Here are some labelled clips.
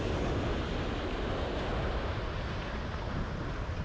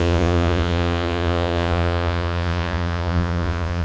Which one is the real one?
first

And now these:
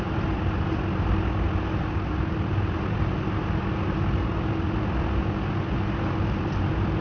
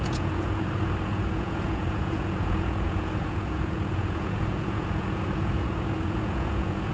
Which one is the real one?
first